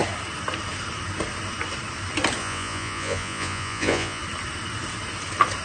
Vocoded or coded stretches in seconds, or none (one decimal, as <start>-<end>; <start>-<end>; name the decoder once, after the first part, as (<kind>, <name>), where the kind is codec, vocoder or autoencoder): 2.4-4.2 (vocoder, Vocos)